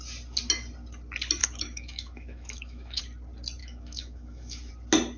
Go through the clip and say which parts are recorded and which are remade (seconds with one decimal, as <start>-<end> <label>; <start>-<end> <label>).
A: 0.0-1.4 recorded; 1.4-3.0 remade; 3.0-3.6 recorded; 3.6-4.7 remade; 4.7-5.2 recorded